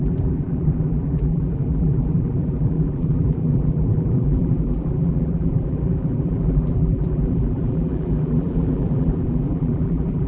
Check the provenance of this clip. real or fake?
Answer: fake